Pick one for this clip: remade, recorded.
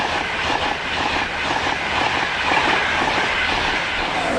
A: recorded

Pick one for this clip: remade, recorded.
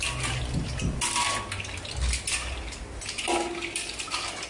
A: recorded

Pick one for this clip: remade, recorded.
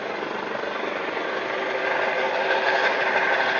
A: recorded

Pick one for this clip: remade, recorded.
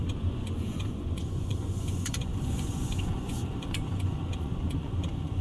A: remade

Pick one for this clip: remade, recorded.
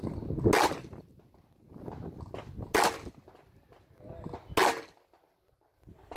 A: recorded